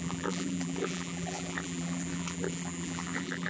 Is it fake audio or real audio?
fake